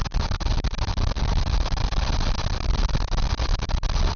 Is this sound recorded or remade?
recorded